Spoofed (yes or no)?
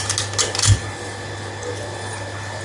no